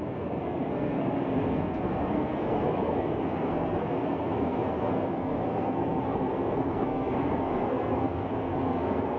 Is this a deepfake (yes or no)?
yes